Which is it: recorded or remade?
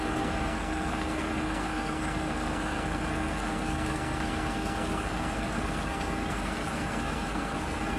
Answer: remade